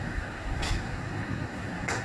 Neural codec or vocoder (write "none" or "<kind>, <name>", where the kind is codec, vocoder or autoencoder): codec, SNAC